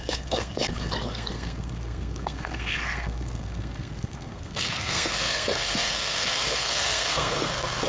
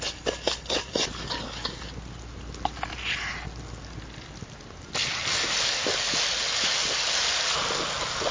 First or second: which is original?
second